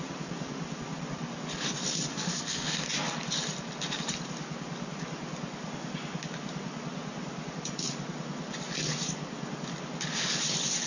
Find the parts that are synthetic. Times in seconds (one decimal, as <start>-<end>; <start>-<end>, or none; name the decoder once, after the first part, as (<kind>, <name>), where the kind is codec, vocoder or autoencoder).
2.1-2.9 (codec, SNAC)